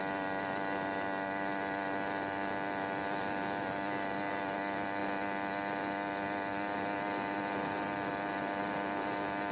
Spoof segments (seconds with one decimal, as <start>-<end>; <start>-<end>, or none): none